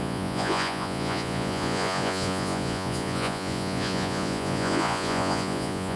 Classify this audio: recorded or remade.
remade